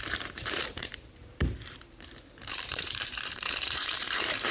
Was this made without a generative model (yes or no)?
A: no